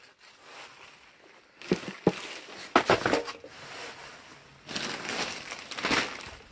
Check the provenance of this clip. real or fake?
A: real